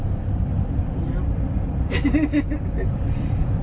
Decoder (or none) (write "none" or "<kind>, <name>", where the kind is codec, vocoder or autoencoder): none